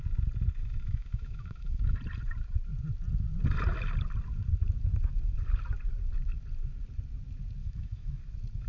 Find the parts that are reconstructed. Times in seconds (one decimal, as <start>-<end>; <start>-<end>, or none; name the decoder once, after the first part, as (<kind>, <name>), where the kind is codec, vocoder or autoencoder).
0.6-1.8 (autoencoder, DAC-VAE); 7.6-8.2

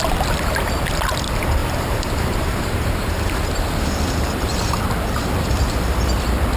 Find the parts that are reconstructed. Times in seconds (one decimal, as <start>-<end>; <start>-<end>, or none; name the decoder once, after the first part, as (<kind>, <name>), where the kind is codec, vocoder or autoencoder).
1.6-4.8 (vocoder, BigVGAN v2)

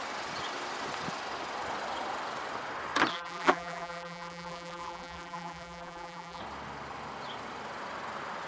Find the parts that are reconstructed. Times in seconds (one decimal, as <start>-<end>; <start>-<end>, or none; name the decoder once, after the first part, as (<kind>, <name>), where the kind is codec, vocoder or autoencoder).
3.1-6.4 (vocoder, BigVGAN v2)

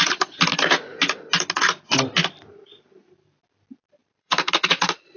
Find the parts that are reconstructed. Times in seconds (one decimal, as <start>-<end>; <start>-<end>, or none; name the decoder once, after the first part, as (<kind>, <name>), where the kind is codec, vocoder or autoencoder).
4.0-5.2 (vocoder, BigVGAN v2)

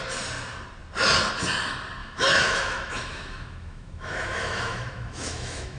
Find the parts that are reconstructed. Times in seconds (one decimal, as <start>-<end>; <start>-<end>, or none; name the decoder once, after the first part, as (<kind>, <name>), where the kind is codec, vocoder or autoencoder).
2.0-5.8 (autoencoder, DAC-VAE)

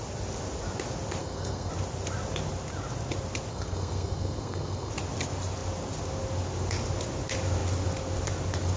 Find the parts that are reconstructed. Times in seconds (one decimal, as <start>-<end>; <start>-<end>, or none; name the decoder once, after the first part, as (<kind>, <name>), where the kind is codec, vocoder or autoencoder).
1.2-1.7 (codec, SNAC); 3.5-4.9